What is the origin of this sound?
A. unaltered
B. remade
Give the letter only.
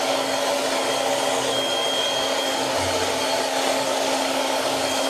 B